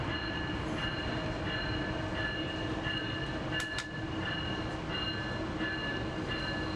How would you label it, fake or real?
real